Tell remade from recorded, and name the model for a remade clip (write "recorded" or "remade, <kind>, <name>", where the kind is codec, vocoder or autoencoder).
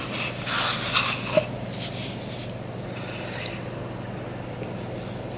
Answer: recorded